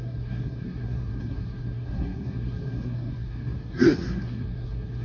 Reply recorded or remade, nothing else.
remade